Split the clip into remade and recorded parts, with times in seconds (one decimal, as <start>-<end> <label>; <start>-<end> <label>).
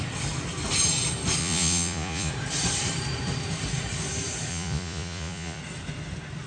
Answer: 0.0-1.4 recorded; 1.4-2.3 remade; 2.3-4.5 recorded; 4.5-5.6 remade; 5.6-6.5 recorded